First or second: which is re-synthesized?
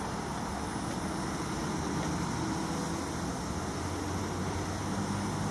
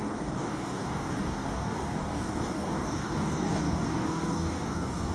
second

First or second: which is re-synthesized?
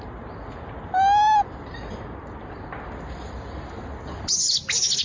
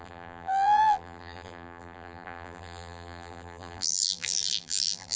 second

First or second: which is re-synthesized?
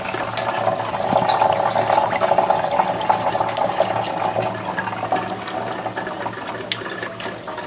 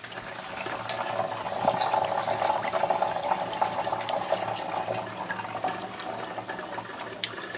second